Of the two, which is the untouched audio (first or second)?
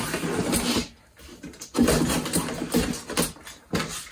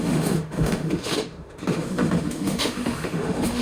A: first